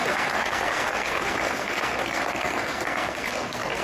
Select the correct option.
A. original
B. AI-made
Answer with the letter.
B